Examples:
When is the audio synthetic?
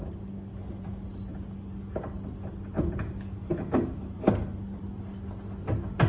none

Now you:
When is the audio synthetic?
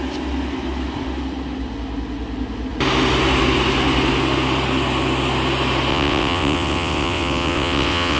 5.9-8.2 (vocoder, WaveNeXt)